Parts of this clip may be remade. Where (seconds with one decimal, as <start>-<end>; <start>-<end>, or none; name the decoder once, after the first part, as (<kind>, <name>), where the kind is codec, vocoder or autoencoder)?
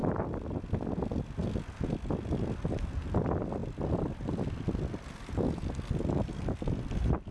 none